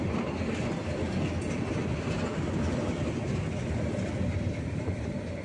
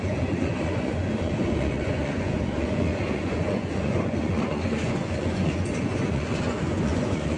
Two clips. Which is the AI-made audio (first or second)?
second